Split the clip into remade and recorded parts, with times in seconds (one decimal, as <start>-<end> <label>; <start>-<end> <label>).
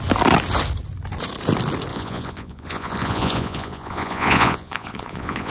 0.0-1.9 recorded; 1.9-5.5 remade